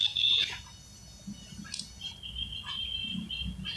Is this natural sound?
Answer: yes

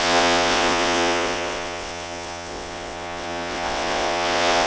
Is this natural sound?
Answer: no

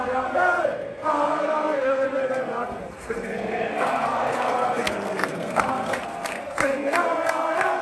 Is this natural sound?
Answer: no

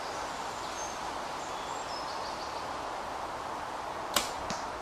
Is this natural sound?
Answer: yes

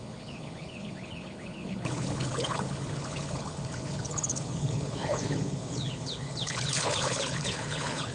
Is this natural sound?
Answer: no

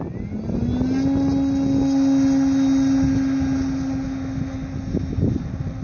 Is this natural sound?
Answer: yes